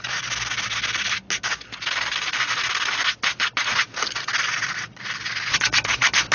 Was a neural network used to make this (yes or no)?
no